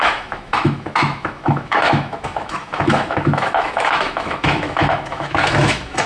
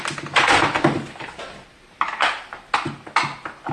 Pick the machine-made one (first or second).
first